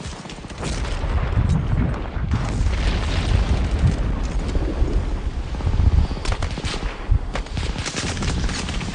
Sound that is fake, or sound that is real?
real